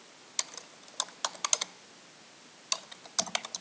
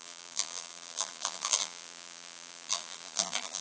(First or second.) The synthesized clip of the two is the second